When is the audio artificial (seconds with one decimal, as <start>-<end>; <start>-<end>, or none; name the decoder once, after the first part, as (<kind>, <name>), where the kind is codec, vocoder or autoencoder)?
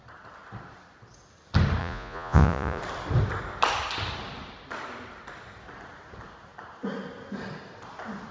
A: 1.8-2.8 (vocoder, Vocos)